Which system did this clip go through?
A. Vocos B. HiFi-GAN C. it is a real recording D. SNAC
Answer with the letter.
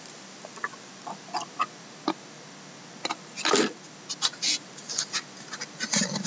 C